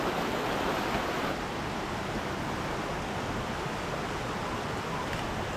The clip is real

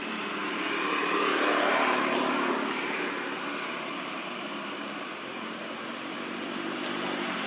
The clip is fake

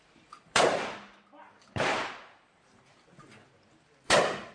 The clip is fake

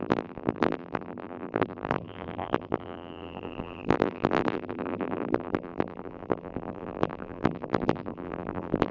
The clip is fake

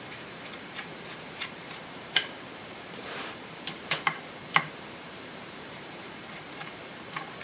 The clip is fake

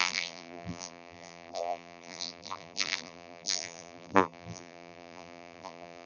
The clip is fake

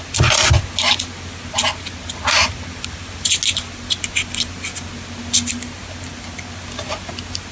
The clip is real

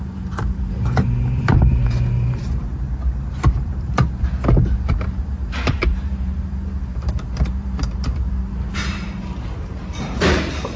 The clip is fake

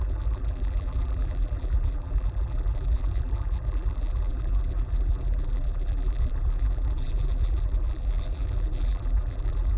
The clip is fake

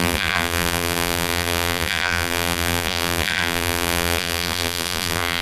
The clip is fake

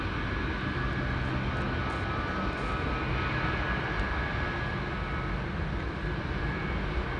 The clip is real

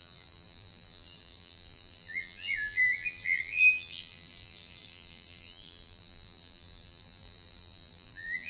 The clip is fake